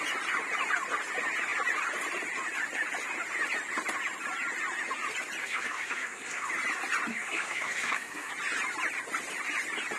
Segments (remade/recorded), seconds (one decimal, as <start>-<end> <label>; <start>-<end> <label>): 0.0-5.4 recorded; 5.4-6.5 remade; 6.5-7.1 recorded; 7.1-8.3 remade; 8.3-10.0 recorded